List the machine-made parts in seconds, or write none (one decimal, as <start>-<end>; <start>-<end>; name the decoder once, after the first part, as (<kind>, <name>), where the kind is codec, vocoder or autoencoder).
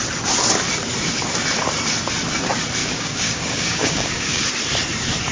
2.8-4.5 (codec, DAC)